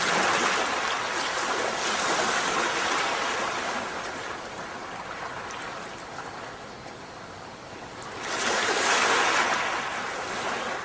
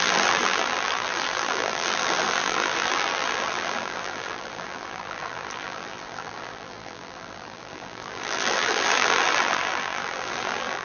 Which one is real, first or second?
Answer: first